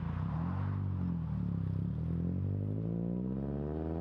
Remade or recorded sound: recorded